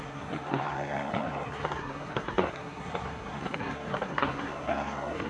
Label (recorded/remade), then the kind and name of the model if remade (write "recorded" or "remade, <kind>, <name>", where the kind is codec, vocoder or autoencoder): remade, codec, SNAC